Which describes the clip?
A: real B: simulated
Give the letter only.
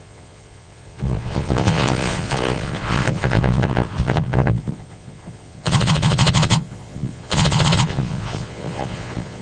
B